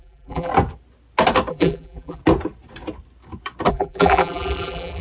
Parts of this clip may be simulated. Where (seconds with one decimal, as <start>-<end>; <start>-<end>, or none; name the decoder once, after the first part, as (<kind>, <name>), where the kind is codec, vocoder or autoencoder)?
0.0-0.5 (vocoder, BigVGAN v2); 1.5-2.2; 3.7-5.0